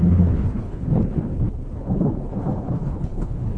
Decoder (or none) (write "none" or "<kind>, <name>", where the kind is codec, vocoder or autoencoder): codec, HILCodec